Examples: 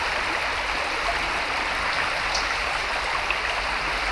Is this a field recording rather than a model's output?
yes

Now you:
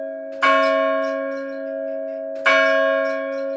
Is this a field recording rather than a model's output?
yes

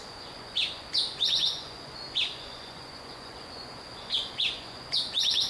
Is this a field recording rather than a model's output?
no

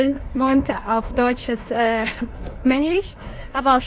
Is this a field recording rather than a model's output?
no